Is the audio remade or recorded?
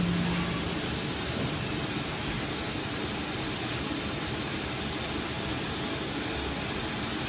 recorded